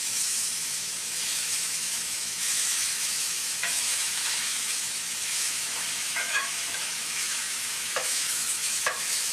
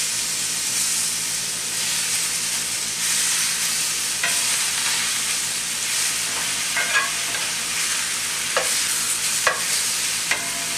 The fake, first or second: first